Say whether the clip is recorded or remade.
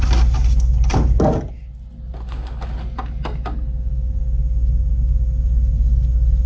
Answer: recorded